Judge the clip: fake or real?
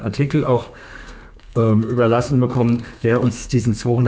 fake